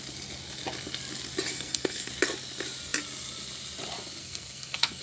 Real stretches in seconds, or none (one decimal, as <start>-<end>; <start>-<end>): 0.0-1.5; 2.1-4.2